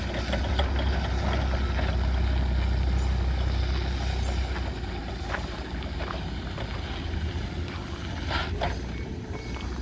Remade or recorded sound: recorded